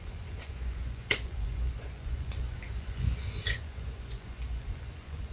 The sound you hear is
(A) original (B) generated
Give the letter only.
B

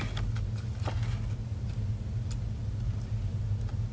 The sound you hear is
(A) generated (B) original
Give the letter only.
B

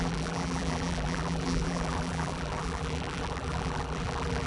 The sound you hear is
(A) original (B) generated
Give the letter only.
B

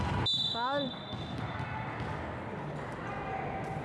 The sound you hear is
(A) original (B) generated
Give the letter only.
A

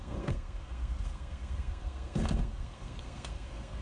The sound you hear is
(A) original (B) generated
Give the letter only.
B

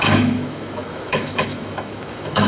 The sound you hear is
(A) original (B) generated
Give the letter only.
B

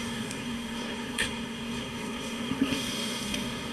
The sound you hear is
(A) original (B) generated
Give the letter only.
B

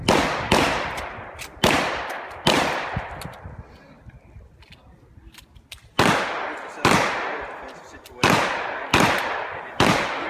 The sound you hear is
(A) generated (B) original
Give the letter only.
B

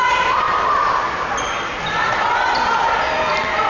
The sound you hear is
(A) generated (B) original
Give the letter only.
B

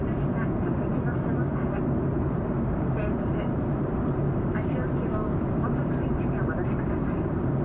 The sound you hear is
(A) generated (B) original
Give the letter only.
A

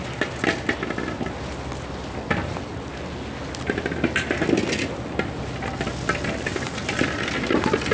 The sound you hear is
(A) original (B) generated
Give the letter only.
A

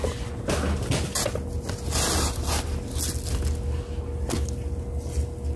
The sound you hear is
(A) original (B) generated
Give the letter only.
A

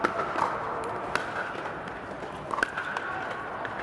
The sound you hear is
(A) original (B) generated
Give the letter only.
A